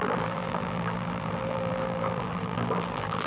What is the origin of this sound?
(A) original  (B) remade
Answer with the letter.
B